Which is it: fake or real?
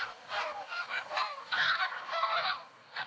fake